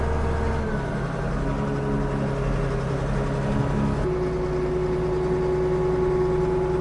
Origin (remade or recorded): recorded